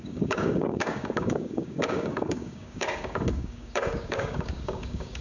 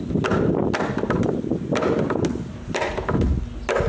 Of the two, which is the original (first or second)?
second